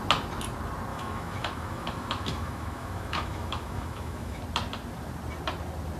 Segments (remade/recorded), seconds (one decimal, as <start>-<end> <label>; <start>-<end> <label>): 0.0-0.9 recorded; 0.9-4.4 remade; 4.4-6.0 recorded